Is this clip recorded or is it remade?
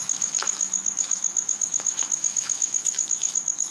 remade